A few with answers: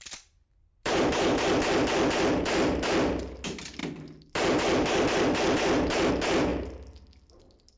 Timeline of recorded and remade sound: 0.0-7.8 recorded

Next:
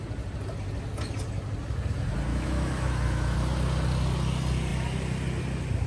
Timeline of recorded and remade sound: 0.0-2.3 recorded; 2.3-3.4 remade; 3.4-5.9 recorded

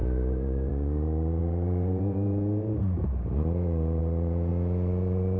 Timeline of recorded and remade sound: 0.0-4.5 remade; 4.5-5.4 recorded